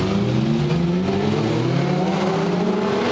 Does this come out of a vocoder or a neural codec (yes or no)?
no